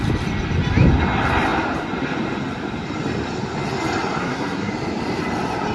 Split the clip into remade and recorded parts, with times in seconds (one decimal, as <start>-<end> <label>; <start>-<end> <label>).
0.0-4.2 recorded; 4.2-4.7 remade; 4.7-5.7 recorded